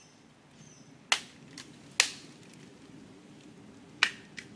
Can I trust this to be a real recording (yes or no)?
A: yes